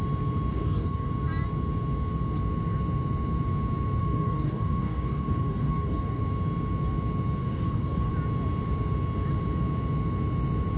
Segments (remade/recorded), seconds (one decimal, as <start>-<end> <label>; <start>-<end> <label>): 0.0-0.5 recorded; 0.5-1.1 remade; 1.1-4.0 recorded; 4.0-6.2 remade; 6.2-7.4 recorded; 7.4-8.1 remade; 8.1-10.8 recorded